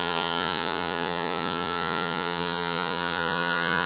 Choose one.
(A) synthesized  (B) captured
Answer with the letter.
A